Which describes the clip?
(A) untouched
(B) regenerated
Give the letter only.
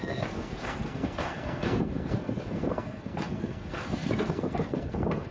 B